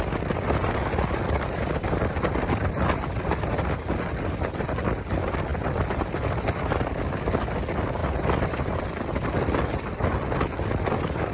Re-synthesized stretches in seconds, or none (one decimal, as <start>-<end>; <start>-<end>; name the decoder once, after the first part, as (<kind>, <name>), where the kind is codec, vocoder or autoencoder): 8.0-8.8 (vocoder, BigVGAN v2)